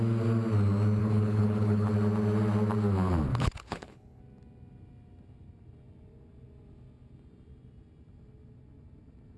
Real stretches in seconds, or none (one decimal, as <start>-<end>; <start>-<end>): 0.0-1.0; 1.9-3.3; 4.2-9.4